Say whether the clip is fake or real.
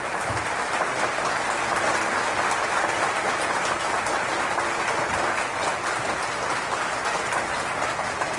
real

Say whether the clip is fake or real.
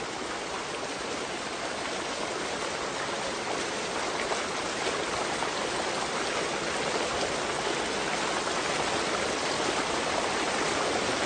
real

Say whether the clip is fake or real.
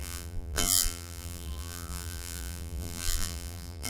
fake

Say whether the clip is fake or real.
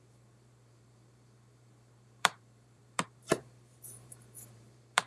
fake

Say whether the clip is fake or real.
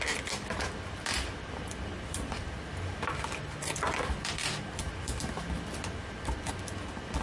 fake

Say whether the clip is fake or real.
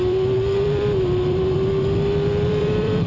fake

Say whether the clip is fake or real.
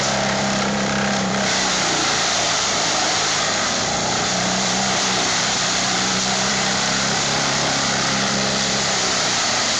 fake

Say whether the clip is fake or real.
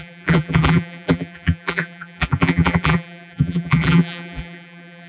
fake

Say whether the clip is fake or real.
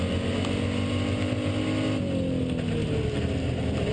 real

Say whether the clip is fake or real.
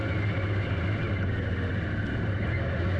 real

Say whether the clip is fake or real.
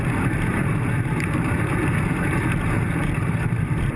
fake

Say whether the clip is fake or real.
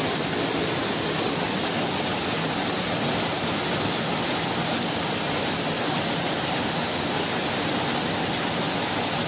real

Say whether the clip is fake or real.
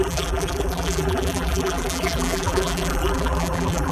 fake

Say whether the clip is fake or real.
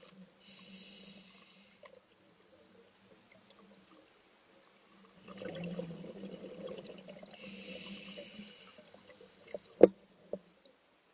real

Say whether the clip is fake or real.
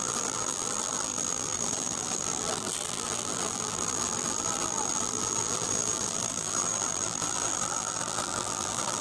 fake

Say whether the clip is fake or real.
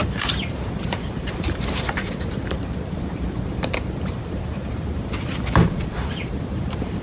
fake